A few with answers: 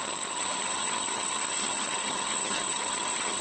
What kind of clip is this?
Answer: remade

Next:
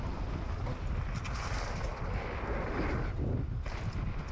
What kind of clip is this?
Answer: recorded